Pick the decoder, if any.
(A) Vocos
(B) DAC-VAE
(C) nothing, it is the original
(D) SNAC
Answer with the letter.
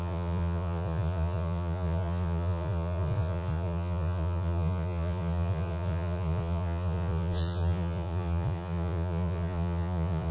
A